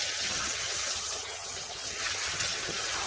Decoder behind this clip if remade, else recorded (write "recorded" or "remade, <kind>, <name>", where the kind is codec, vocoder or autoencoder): remade, vocoder, HiFi-GAN